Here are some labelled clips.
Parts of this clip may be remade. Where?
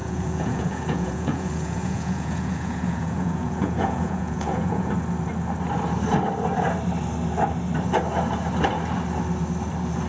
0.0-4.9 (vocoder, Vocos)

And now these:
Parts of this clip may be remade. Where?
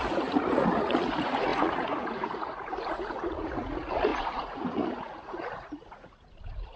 0.0-6.8 (vocoder, Vocos)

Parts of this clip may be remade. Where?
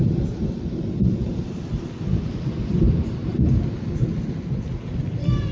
none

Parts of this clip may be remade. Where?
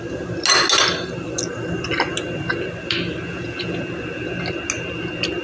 3.3-3.8 (vocoder, Vocos)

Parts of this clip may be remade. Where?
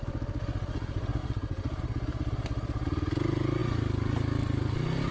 none